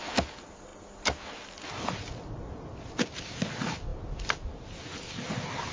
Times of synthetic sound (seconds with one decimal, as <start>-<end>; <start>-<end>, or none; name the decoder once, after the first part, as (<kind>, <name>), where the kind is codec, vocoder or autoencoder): 0.0-0.7 (vocoder, BigVGAN v2); 2.9-5.7